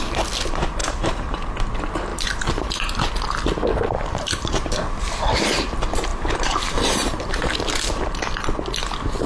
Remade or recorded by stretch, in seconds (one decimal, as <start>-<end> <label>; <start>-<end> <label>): 0.0-0.8 recorded; 0.8-1.3 remade; 1.3-2.1 recorded; 2.1-3.1 remade; 3.1-3.7 recorded; 3.7-4.7 remade; 4.7-6.1 recorded; 6.1-7.7 remade; 7.7-9.3 recorded